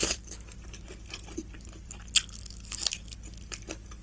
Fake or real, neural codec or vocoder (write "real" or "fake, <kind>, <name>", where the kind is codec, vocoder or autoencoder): real